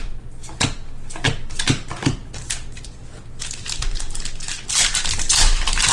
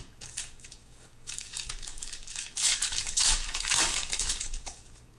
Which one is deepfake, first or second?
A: second